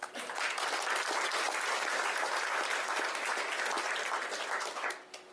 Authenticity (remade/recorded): recorded